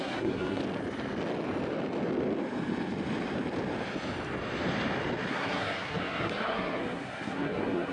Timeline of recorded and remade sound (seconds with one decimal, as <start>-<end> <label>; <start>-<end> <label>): 0.0-0.6 remade; 0.6-5.3 recorded; 5.3-7.9 remade